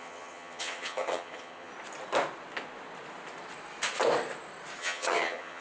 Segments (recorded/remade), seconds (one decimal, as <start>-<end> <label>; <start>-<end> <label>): 0.0-1.7 remade; 1.7-4.8 recorded; 4.8-5.6 remade

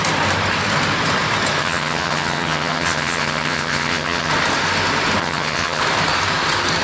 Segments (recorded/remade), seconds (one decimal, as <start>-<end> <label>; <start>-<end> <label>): 0.0-1.6 recorded; 1.6-4.3 remade; 4.3-5.2 recorded; 5.2-5.8 remade; 5.8-6.8 recorded

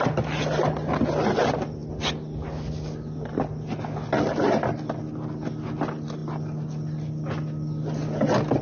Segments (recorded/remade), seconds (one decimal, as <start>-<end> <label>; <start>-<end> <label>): 0.0-8.6 recorded

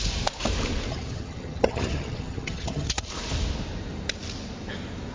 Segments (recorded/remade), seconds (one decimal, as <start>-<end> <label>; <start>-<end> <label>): 0.0-0.9 recorded; 0.9-3.1 remade; 3.1-5.1 recorded

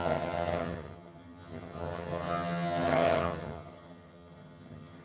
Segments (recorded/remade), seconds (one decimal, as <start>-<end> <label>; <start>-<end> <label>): 0.0-5.0 remade

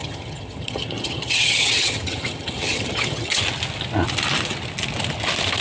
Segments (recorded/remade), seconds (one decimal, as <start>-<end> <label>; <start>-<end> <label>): 0.0-3.4 remade; 3.4-5.6 recorded

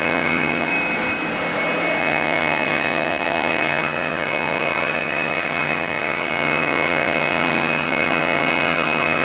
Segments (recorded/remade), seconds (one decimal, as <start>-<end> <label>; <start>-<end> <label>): 0.0-0.7 remade; 0.7-2.0 recorded; 2.0-9.2 remade

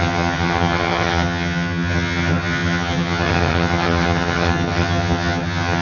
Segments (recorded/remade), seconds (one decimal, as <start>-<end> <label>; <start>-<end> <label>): 0.0-5.8 remade